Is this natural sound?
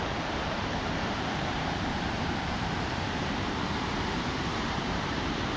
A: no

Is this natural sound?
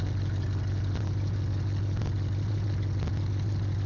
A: yes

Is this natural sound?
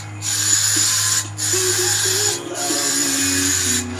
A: yes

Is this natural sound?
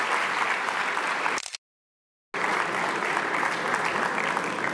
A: yes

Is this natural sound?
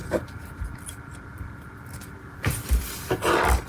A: no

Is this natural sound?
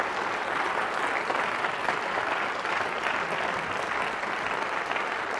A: yes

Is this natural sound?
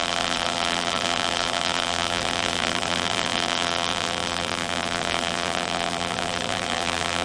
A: no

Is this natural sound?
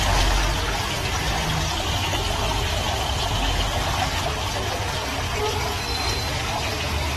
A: yes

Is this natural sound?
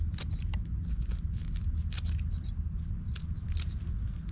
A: yes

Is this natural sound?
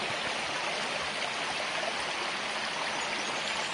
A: yes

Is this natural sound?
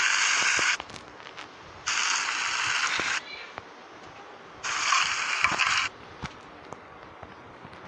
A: yes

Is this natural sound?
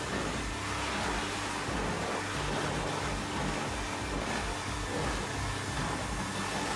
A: yes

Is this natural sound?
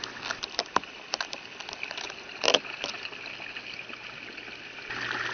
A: yes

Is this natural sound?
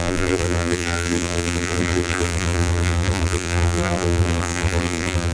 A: no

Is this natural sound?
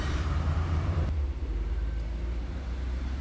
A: no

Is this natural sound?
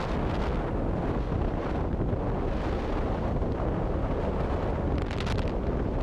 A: yes